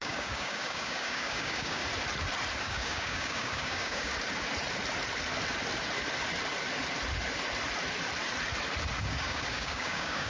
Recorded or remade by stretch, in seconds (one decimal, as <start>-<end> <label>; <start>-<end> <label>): 0.0-1.8 remade; 1.8-2.6 recorded; 2.6-4.1 remade; 4.1-9.0 recorded; 9.0-10.3 remade